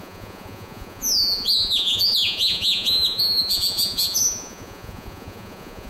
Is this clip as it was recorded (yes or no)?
no